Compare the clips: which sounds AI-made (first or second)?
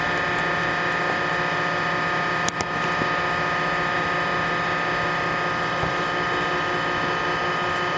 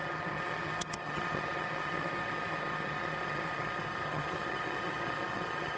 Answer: second